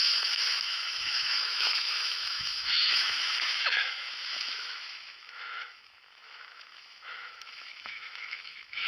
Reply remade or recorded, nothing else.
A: remade